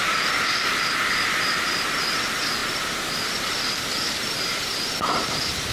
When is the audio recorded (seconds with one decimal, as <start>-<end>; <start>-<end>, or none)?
0.0-5.7

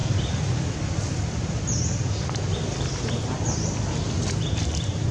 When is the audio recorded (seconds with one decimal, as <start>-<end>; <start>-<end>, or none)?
3.1-5.1

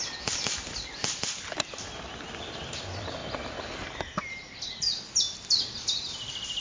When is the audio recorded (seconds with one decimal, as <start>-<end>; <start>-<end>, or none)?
0.0-6.6

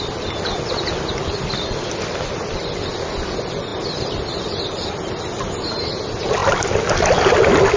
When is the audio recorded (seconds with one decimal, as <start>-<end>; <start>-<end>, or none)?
0.0-7.8

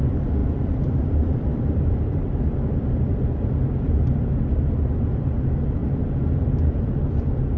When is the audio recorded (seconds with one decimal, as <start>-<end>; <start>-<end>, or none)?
0.0-0.4; 4.3-5.8; 7.0-7.6

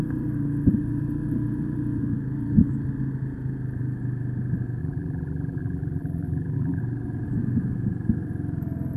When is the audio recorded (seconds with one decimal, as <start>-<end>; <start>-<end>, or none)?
0.0-4.8; 6.8-9.0

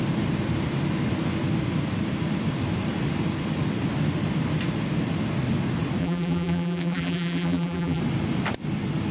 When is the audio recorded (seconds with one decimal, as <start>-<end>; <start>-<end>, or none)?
0.0-6.0; 8.0-9.1